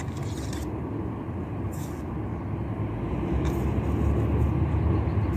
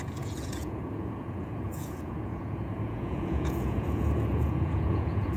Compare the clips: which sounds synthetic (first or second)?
second